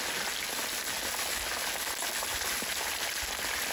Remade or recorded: recorded